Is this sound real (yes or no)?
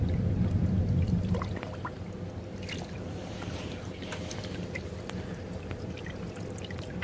yes